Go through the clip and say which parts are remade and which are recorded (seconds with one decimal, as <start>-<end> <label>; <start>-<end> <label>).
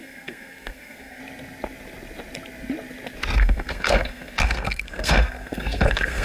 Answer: 0.0-1.2 remade; 1.2-3.4 recorded; 3.4-6.2 remade